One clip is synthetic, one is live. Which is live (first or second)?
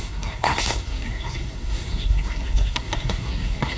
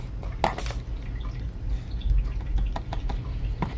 second